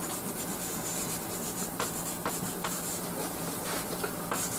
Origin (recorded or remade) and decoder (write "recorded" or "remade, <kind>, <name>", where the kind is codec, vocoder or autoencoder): remade, vocoder, BigVGAN v2